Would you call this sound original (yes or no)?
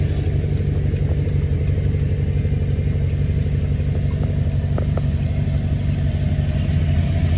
yes